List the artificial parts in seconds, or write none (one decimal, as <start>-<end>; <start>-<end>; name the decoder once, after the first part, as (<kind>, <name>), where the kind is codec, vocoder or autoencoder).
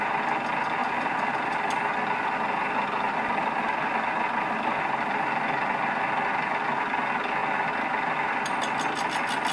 0.8-1.3 (vocoder, BigVGAN v2); 7.4-9.1